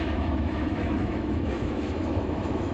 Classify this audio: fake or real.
fake